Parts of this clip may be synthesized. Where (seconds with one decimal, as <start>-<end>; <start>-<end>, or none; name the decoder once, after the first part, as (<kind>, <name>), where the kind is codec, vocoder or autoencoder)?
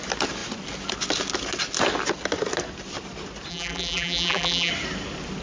3.5-4.7 (vocoder, BigVGAN v2)